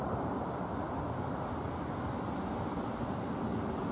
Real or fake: real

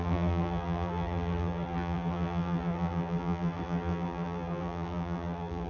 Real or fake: fake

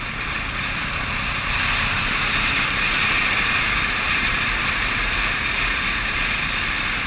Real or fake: fake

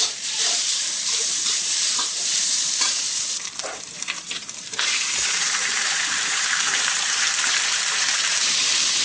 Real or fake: fake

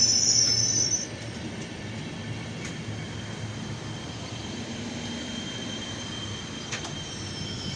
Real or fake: fake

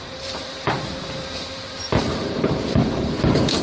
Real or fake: fake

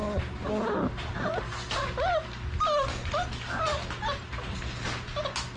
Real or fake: real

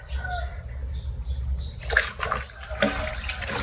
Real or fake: real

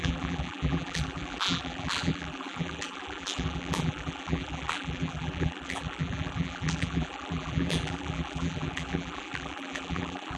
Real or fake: fake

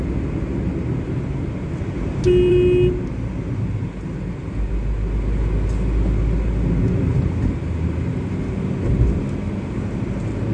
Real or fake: real